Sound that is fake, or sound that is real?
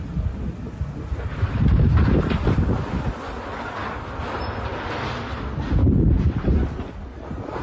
real